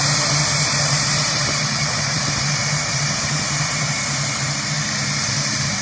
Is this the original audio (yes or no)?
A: no